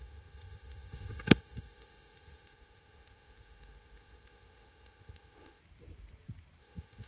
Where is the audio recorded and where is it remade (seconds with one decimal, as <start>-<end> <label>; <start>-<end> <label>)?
0.0-5.6 remade; 5.6-6.6 recorded; 6.6-7.1 remade